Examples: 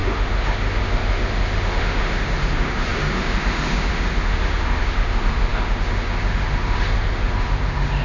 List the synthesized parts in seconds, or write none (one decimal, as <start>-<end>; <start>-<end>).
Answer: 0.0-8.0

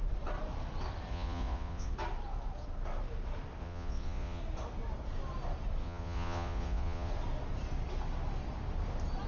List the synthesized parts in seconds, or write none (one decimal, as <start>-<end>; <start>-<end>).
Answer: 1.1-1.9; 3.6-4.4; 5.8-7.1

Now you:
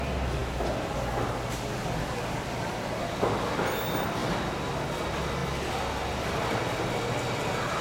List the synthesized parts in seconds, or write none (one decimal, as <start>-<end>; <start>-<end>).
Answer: none

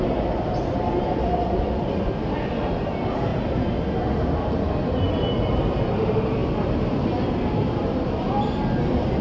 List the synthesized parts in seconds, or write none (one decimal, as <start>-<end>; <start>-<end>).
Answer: none